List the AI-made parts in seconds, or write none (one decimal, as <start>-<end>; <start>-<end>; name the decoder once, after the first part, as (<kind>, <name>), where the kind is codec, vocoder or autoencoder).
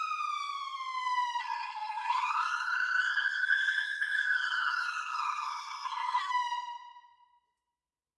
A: 1.4-6.3 (codec, SNAC)